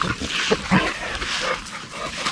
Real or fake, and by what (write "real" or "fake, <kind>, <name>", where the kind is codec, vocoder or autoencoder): real